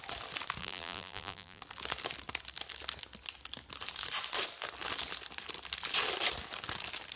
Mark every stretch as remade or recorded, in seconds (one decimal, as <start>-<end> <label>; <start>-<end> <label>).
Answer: 0.0-0.6 recorded; 0.6-1.6 remade; 1.6-7.2 recorded